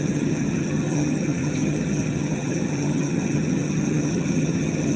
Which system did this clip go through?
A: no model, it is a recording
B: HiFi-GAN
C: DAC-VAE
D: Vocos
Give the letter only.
B